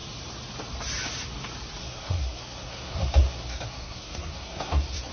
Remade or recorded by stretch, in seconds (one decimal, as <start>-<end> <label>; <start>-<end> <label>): 0.0-1.8 recorded; 1.8-5.1 remade